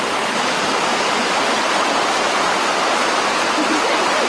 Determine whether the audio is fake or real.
real